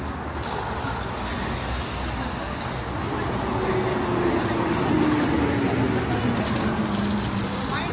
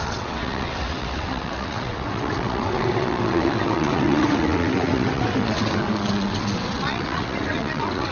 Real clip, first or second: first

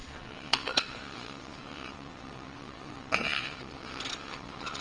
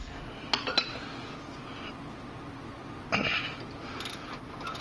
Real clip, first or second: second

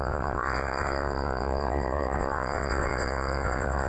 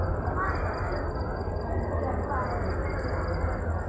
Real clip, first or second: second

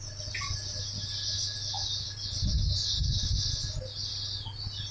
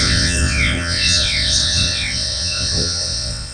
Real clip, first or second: first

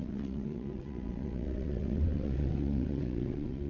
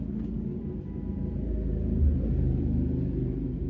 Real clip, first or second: second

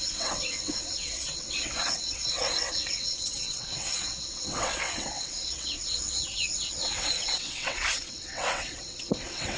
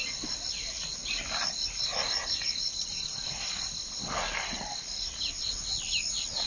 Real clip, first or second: second